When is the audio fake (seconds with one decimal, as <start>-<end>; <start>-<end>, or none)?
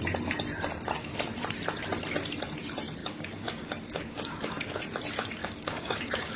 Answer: 3.0-4.8; 5.4-6.4